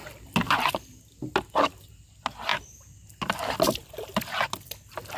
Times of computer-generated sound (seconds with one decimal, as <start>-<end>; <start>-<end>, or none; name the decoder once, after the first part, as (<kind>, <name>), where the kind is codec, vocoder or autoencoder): none